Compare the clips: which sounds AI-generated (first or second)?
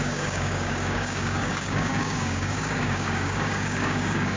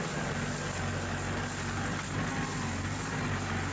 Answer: first